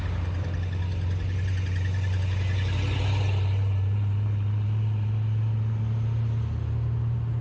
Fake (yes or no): no